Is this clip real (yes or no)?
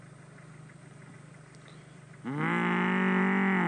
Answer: yes